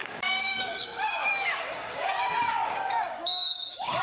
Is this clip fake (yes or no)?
yes